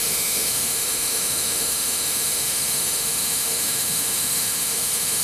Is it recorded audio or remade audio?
remade